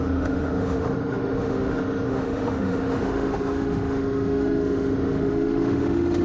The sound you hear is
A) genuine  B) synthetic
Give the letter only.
B